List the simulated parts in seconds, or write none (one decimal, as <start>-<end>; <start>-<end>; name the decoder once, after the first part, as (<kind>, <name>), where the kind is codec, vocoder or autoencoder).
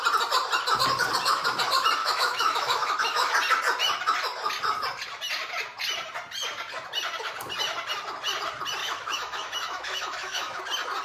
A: 2.0-3.3 (autoencoder, DAC-VAE); 8.8-10.6